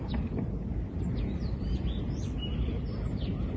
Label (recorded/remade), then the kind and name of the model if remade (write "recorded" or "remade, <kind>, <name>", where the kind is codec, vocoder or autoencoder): recorded